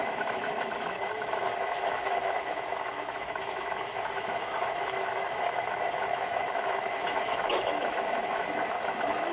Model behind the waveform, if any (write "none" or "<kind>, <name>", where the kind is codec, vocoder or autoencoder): autoencoder, DAC-VAE